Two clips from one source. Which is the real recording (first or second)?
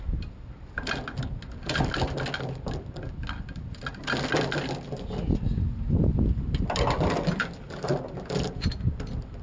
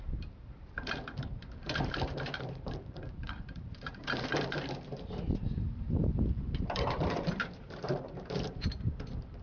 first